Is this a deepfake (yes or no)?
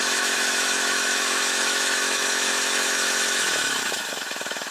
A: yes